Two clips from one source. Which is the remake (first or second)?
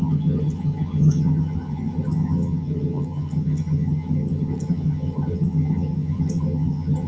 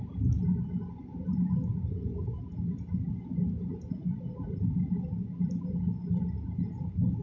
first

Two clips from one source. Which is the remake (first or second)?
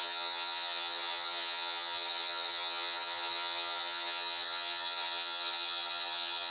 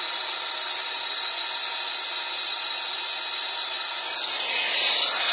first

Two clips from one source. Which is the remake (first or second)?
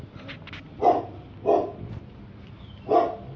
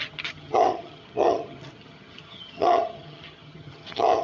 second